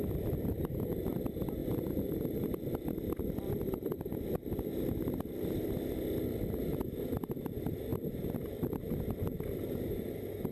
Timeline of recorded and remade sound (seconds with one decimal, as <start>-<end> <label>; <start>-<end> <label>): 0.0-1.6 recorded; 1.6-2.5 remade; 2.5-10.5 recorded